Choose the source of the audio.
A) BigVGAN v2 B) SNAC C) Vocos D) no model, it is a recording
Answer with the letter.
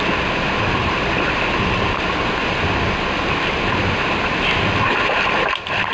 D